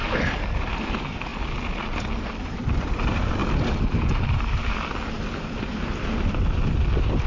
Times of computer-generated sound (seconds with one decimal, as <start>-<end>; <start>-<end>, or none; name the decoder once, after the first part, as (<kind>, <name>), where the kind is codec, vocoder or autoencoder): none

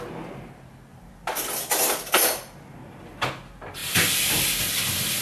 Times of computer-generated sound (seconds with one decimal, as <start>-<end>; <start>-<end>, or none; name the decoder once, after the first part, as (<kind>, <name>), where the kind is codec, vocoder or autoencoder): 0.9-3.3 (vocoder, BigVGAN v2); 3.8-4.7